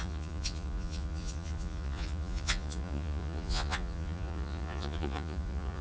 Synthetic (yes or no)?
yes